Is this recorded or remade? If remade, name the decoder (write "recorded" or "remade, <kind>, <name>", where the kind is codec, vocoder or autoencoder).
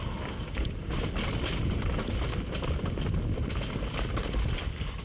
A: recorded